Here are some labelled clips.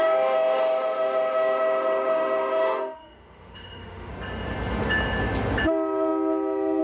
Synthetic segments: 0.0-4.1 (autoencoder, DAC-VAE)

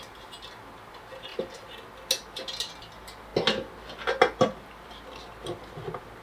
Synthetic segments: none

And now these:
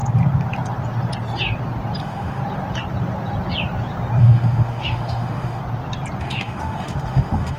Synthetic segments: 2.0-2.4 (autoencoder, DAC-VAE); 4.2-5.6; 6.2-7.6

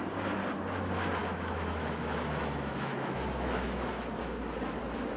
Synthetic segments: 1.2-3.9 (autoencoder, DAC-VAE)